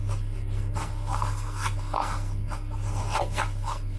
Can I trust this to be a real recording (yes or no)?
no